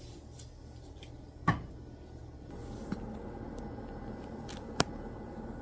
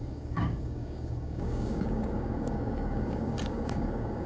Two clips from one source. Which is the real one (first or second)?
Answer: first